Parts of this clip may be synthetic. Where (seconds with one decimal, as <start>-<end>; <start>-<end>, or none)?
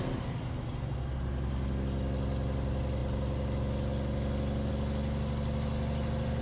none